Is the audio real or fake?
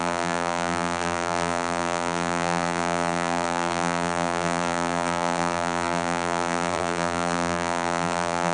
fake